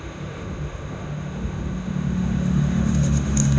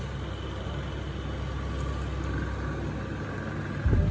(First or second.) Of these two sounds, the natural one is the second